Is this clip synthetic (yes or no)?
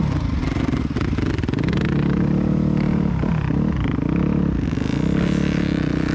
no